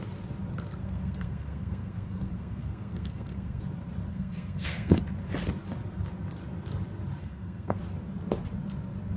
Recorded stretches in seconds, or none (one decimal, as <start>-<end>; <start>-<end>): 0.0-0.8; 3.6-4.1; 5.0-7.2; 7.8-9.2

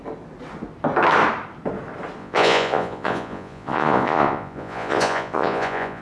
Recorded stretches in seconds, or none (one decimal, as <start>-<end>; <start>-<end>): 0.0-2.2